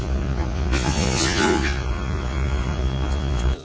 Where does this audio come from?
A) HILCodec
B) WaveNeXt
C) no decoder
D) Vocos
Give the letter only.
D